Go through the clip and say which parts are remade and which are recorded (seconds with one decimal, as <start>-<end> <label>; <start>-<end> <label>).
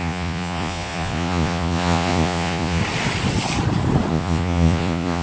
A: 0.0-2.8 remade; 2.8-4.1 recorded; 4.1-5.2 remade